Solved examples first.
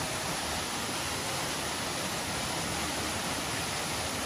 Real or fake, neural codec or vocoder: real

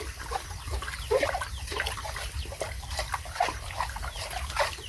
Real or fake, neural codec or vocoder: real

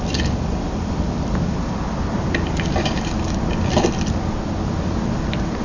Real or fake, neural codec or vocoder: real